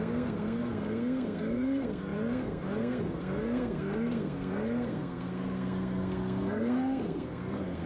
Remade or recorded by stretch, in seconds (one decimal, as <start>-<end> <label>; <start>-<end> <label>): 0.0-7.9 remade